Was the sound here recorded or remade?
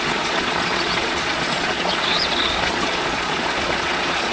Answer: remade